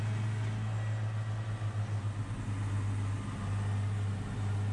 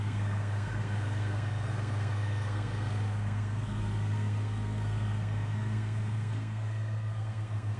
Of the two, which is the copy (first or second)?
second